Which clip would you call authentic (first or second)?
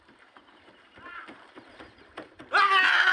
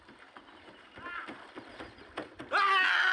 second